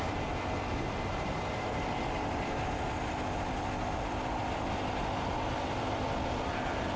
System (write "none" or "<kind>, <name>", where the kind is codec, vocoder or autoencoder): none